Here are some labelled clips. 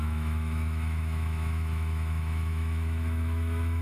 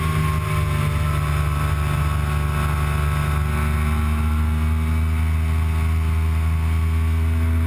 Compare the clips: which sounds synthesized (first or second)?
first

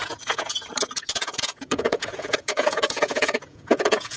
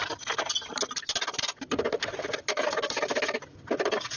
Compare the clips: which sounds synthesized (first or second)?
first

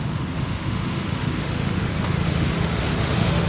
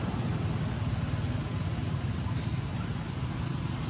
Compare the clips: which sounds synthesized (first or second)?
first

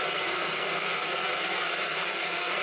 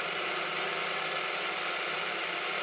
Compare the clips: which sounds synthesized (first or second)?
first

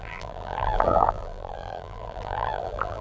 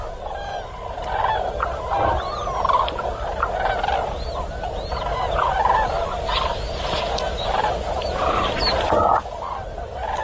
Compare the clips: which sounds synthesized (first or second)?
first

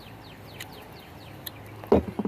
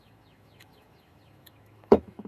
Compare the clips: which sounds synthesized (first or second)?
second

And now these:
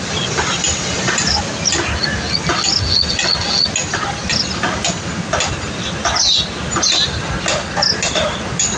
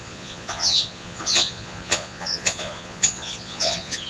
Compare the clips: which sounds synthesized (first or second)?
second